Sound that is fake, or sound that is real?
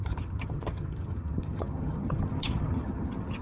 fake